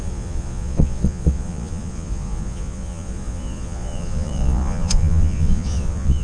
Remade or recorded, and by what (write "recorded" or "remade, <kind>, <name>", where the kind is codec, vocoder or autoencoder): remade, vocoder, Vocos